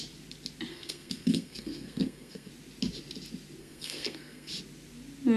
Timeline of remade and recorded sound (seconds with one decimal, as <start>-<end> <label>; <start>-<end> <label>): 0.0-0.7 recorded; 0.7-2.5 remade; 2.5-3.6 recorded; 3.6-4.5 remade; 4.5-5.4 recorded